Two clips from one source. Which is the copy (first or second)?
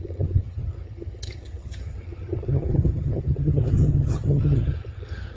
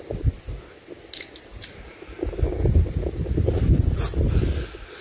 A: first